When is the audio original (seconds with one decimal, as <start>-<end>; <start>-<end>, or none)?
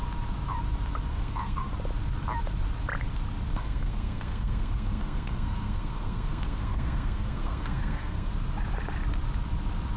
0.0-1.1; 1.7-3.5; 8.3-10.0